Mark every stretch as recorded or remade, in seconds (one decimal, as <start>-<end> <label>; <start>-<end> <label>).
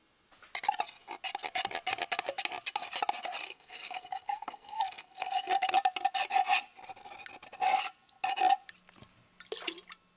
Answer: 0.0-3.5 recorded; 3.5-5.7 remade; 5.7-10.2 recorded